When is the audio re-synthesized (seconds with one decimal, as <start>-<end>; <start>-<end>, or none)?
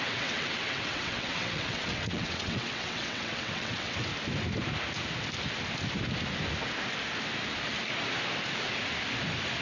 0.0-4.1